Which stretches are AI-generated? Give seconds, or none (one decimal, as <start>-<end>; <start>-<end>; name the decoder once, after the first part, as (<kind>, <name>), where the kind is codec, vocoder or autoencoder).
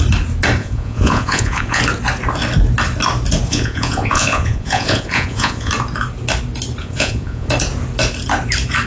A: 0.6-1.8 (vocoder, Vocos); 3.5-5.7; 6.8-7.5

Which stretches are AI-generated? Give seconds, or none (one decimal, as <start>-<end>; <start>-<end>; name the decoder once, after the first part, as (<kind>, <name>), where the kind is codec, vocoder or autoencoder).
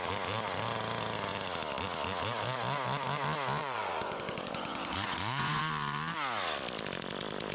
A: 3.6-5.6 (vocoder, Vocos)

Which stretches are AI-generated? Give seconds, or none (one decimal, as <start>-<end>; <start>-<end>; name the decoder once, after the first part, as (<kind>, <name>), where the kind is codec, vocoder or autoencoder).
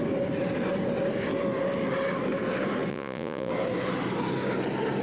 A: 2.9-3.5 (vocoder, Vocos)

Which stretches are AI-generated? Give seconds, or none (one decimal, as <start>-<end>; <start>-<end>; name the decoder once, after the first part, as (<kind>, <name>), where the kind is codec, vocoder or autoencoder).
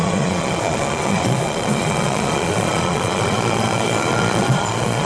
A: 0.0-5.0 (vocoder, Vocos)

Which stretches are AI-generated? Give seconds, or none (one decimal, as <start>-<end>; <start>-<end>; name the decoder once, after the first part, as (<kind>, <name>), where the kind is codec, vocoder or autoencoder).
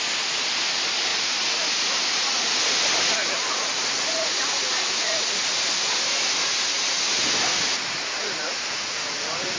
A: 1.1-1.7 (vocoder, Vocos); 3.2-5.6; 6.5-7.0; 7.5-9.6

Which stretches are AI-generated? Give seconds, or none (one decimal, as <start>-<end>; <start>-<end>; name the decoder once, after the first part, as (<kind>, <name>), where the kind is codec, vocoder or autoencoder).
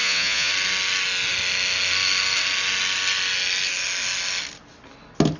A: 0.0-0.5 (vocoder, Vocos)